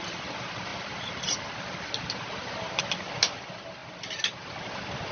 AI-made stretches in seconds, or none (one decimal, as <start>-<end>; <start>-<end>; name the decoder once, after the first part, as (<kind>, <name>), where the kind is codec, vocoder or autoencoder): none